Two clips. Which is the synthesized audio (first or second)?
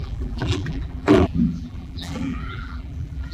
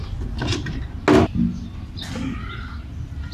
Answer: first